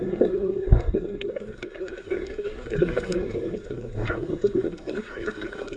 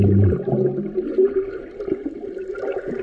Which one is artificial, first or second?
first